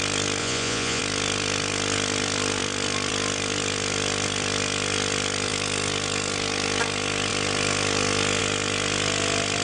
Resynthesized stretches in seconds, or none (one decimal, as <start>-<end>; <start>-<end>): 0.4-1.0